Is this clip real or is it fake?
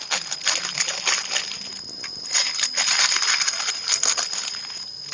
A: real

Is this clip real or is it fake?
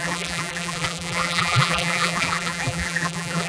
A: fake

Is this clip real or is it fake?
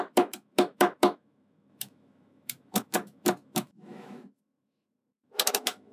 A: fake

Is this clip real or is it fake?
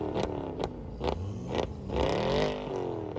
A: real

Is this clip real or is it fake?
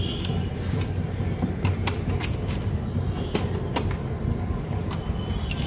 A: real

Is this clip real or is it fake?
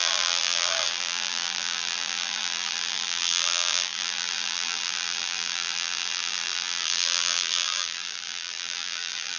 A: fake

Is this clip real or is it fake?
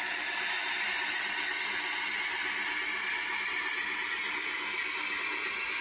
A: real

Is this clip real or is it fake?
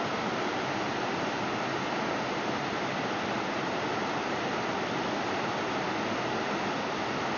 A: real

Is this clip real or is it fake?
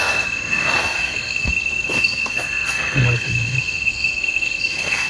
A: fake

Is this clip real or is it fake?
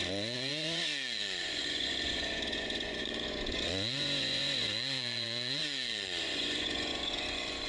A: fake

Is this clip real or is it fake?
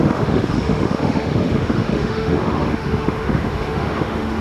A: fake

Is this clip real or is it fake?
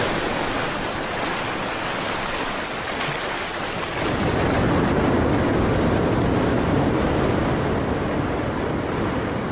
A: real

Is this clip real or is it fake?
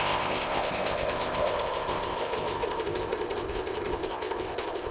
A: fake